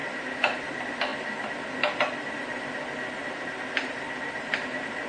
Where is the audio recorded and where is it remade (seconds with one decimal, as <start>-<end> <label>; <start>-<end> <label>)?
0.0-0.6 remade; 0.6-5.1 recorded